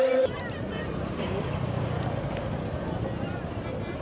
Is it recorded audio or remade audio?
recorded